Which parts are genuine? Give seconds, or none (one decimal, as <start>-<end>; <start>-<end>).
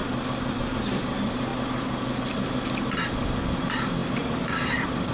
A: 0.0-0.5; 1.5-3.6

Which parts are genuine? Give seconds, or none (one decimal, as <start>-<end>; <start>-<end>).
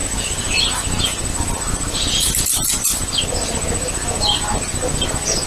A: 0.0-5.5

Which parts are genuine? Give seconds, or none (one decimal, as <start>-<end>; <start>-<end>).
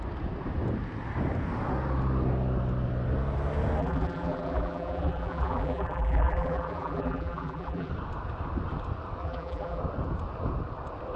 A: 0.0-3.8; 7.9-9.2; 9.8-11.2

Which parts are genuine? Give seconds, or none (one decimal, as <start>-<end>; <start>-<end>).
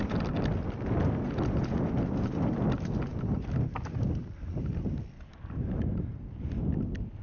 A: 0.0-5.3; 6.3-7.2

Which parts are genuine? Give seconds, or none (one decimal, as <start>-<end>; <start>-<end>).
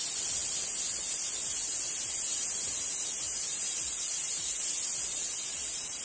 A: 0.0-2.3